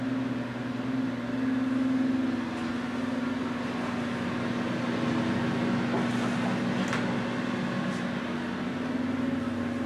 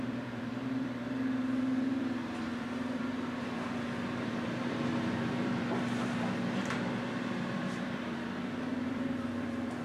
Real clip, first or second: first